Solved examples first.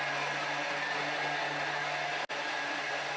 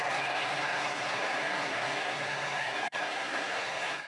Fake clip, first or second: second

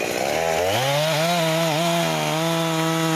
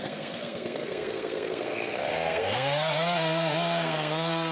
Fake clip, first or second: second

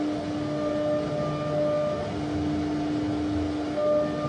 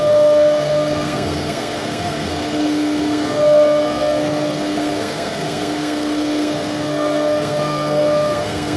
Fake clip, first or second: second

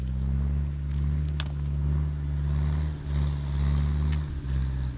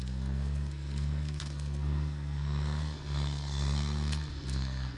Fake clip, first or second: second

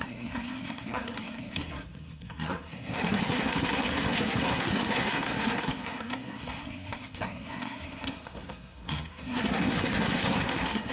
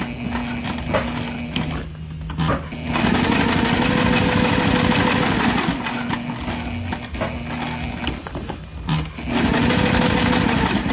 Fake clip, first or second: first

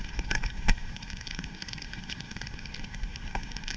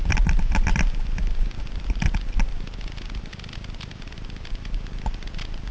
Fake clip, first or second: first